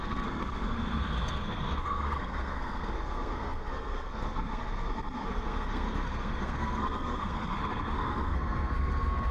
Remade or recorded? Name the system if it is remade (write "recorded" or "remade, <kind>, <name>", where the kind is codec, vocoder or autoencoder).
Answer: remade, codec, SNAC